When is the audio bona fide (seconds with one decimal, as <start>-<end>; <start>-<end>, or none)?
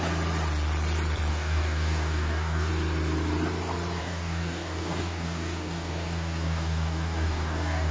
0.0-1.3; 2.7-4.0